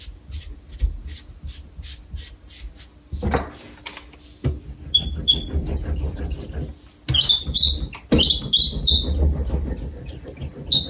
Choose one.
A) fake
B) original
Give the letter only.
B